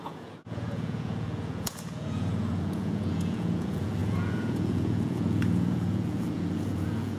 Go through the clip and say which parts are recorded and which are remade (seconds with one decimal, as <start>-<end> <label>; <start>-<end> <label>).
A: 0.0-7.2 remade